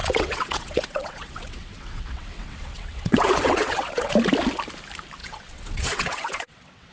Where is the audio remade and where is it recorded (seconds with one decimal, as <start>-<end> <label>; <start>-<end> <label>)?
0.0-4.1 remade; 4.1-5.2 recorded; 5.2-6.9 remade